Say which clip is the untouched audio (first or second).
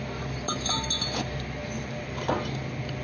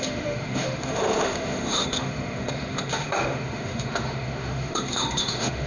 first